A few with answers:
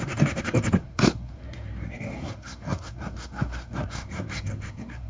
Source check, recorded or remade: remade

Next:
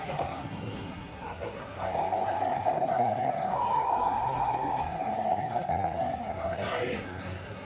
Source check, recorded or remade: remade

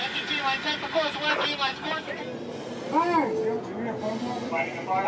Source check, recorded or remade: recorded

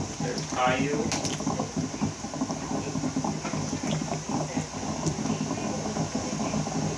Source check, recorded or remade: recorded